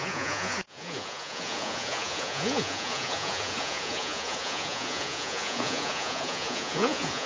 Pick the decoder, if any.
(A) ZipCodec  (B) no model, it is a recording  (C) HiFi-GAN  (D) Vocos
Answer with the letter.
D